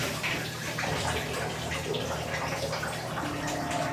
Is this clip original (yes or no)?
no